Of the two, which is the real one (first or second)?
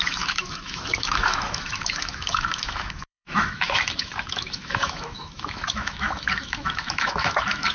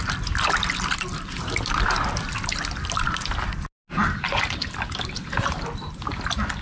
second